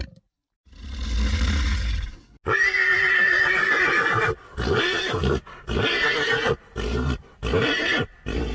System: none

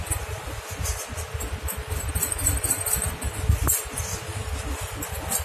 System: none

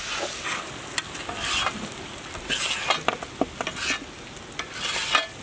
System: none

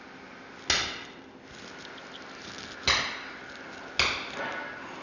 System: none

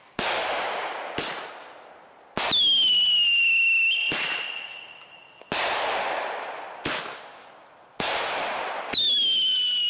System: none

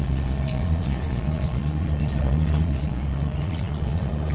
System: vocoder, Vocos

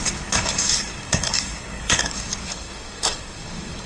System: codec, DAC